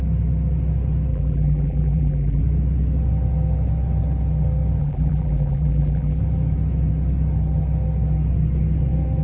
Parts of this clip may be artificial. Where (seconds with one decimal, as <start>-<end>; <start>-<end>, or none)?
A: 1.1-2.4; 4.8-6.2